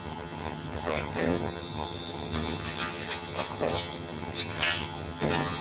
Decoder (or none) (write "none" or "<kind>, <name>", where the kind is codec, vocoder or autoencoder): vocoder, HiFi-GAN